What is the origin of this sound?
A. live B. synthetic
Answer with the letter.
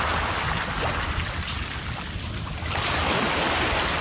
A